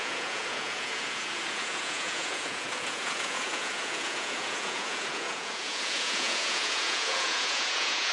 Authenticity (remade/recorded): remade